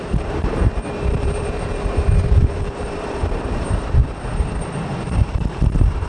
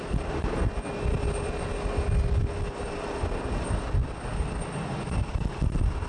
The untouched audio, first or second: second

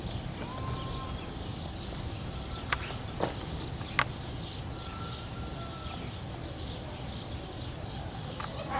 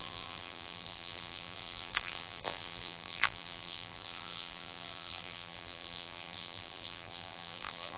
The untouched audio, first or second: first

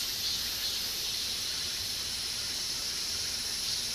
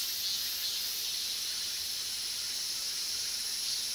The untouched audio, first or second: second